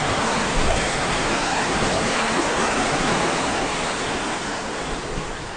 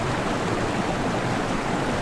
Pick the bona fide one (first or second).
second